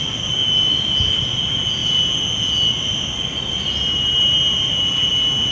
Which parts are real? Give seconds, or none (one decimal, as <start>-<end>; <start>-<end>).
0.0-5.5